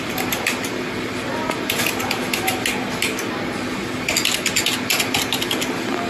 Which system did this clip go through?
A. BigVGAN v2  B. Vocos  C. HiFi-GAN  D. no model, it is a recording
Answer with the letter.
D